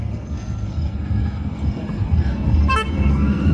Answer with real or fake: fake